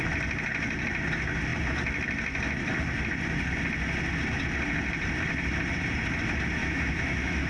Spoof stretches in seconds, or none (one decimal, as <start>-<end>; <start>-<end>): 6.6-7.5